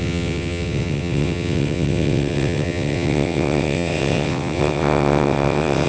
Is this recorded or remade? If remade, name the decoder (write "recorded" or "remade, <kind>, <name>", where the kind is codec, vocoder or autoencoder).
remade, vocoder, WaveNeXt